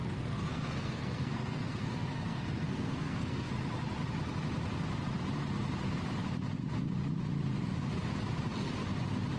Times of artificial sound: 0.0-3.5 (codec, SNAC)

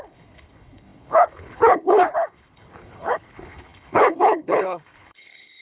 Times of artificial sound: 0.0-5.6 (codec, HILCodec)

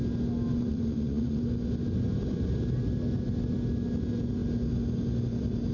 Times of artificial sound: 0.5-1.4 (vocoder, Vocos)

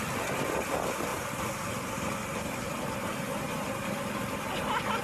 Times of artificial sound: 1.1-4.1 (vocoder, BigVGAN v2)

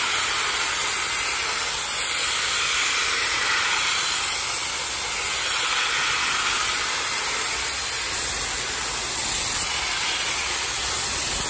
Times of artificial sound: none

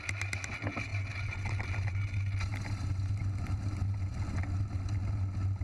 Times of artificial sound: none